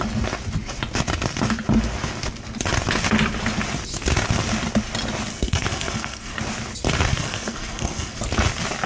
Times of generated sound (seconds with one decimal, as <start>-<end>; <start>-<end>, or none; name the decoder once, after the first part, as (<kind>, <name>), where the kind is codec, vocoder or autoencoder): 5.3-6.4 (codec, SNAC); 7.1-8.2